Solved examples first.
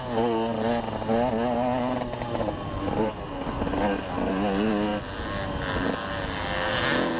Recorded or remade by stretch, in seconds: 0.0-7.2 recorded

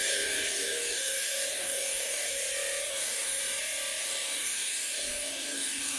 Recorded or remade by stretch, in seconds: 0.0-2.4 remade; 2.4-2.9 recorded; 2.9-3.4 remade; 3.4-4.0 recorded; 4.0-6.0 remade

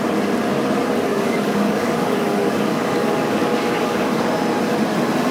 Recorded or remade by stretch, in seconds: 0.0-1.1 recorded; 1.1-4.3 remade; 4.3-5.3 recorded

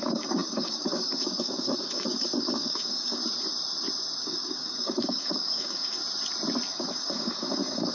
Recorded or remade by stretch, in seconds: 0.0-3.2 remade; 3.2-4.2 recorded; 4.2-6.0 remade; 6.0-6.7 recorded; 6.7-7.9 remade